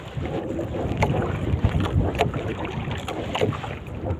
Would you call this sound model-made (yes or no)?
no